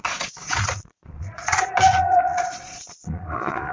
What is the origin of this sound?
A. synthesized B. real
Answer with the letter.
A